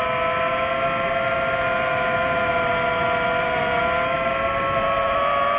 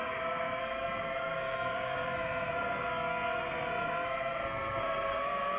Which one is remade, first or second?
second